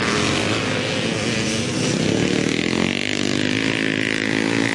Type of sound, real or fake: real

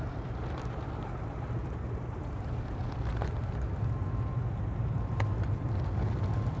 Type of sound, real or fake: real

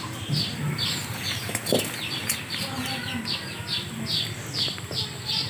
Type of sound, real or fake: real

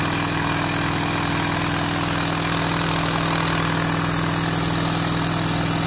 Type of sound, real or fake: real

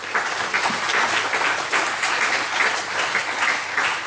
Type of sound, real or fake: real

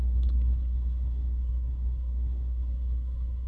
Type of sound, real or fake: fake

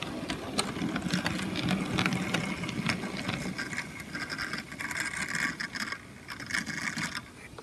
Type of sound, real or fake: real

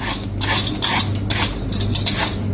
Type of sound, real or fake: real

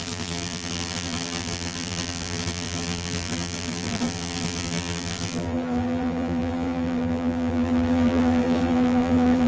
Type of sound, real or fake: fake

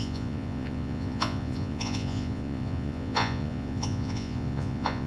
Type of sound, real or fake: fake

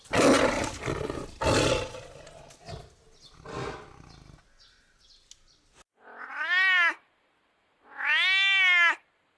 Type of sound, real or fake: real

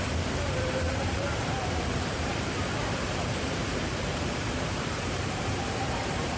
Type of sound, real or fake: fake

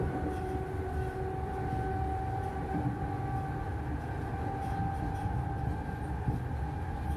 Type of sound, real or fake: real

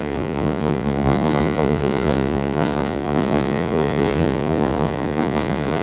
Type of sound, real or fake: fake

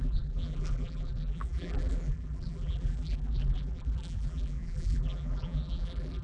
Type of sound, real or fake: fake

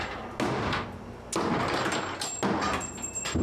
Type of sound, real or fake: real